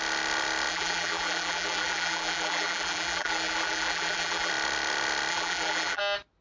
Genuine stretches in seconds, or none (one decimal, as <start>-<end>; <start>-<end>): 0.0-0.7; 4.5-5.3; 6.0-6.4